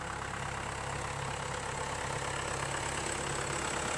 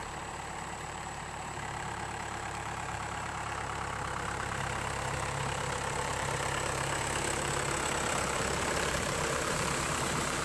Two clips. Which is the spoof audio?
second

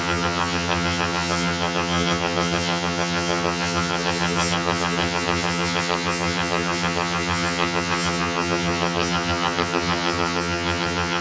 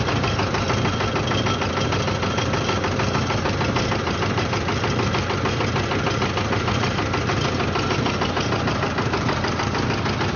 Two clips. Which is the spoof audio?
first